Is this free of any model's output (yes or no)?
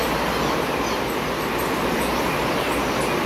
yes